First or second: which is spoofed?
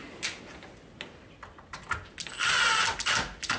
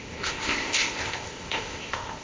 second